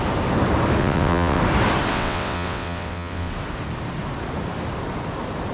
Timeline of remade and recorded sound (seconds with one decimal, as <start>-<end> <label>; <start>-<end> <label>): 0.0-0.8 recorded; 0.8-1.4 remade; 1.4-1.9 recorded; 1.9-3.3 remade; 3.3-5.5 recorded